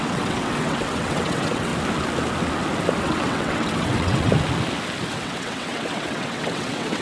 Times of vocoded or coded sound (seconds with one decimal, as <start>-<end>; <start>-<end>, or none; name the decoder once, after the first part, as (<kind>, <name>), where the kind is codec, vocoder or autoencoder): 0.0-1.7 (vocoder, WaveNeXt); 3.0-4.3; 5.1-7.0